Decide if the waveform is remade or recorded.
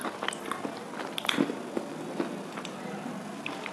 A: recorded